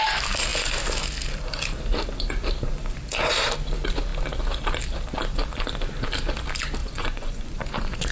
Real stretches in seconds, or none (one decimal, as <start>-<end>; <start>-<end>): 0.0-6.8